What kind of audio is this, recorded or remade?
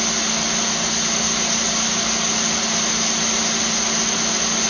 recorded